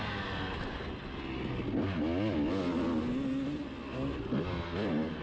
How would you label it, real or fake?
real